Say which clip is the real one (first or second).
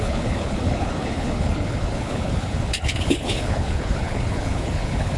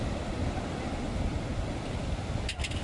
second